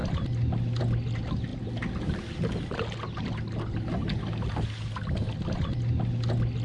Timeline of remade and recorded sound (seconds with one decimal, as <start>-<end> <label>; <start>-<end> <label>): 0.0-6.6 recorded